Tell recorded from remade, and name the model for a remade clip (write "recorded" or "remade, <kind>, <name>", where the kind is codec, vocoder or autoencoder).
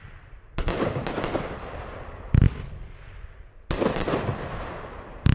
recorded